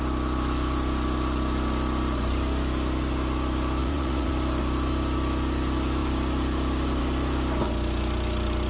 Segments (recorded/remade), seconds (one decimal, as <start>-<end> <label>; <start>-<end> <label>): 0.0-3.8 recorded; 3.8-4.3 remade; 4.3-8.7 recorded